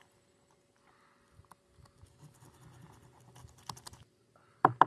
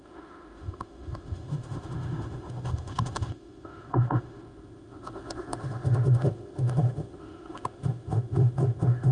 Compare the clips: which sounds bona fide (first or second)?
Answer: first